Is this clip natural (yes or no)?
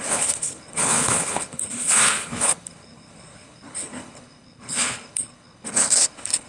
no